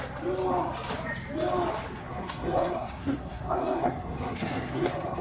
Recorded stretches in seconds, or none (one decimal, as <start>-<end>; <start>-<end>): 0.0-2.0

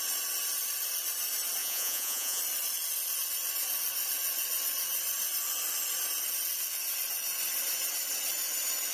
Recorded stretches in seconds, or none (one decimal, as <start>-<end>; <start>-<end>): 0.0-1.6; 2.4-8.9

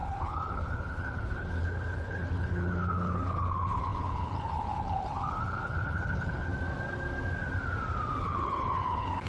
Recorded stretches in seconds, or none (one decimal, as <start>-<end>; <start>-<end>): 6.5-8.2